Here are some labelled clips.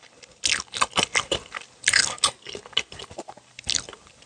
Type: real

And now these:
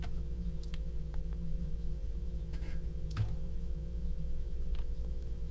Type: fake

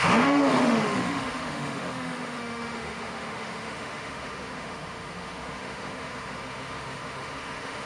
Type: fake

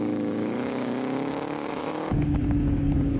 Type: fake